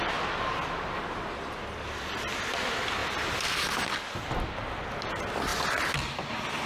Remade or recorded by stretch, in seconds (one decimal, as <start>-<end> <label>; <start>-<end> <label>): 0.0-3.0 recorded; 3.0-4.0 remade; 4.0-6.7 recorded